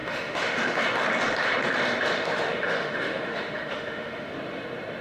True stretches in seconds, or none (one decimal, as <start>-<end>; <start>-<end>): 0.8-2.1; 4.3-5.0